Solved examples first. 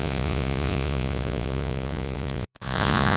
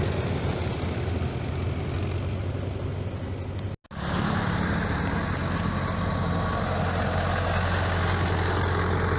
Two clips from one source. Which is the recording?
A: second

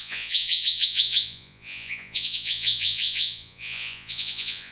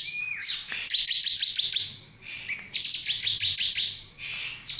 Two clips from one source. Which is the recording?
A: second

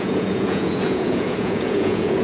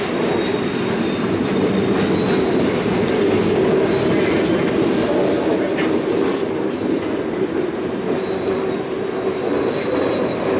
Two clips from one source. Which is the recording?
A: second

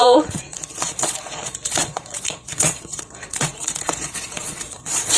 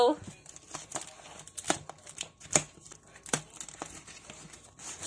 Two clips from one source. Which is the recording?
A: second